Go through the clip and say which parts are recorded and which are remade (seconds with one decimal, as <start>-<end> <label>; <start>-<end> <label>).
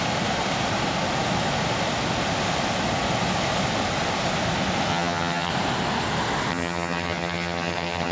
0.0-4.9 recorded; 4.9-5.5 remade; 5.5-6.5 recorded; 6.5-8.1 remade